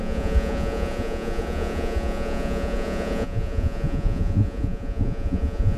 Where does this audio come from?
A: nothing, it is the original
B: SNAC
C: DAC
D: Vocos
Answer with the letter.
D